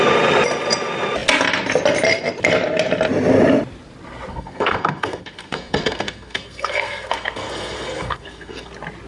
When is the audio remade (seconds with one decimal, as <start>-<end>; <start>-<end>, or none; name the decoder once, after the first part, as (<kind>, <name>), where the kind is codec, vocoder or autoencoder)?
4.3-8.7 (codec, SNAC)